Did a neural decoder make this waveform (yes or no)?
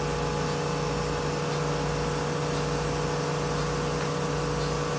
no